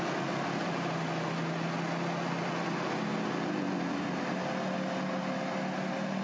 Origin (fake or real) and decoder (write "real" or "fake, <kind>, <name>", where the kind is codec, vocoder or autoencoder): real